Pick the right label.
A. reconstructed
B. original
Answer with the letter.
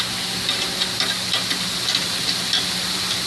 B